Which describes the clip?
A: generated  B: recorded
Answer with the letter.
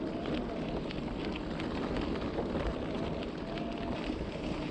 B